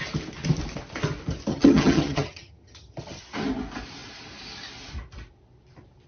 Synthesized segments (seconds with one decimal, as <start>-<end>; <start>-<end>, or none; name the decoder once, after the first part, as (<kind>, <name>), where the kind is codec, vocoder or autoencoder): 1.5-3.2 (vocoder, HiFi-GAN)